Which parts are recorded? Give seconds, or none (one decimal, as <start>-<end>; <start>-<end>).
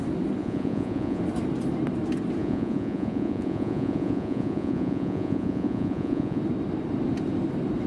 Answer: 0.0-0.4; 1.2-2.4; 6.4-7.9